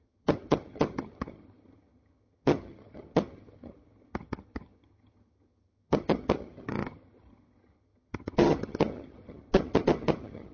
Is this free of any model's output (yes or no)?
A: no